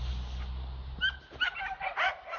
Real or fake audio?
real